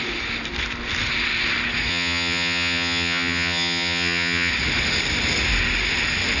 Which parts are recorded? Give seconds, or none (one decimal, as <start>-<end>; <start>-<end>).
0.0-1.9; 4.5-6.4